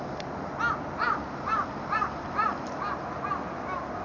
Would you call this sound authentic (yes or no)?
yes